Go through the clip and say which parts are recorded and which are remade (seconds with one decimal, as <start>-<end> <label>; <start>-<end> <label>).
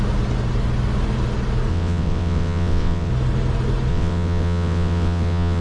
0.0-1.7 recorded; 1.7-3.1 remade; 3.1-3.9 recorded; 3.9-5.6 remade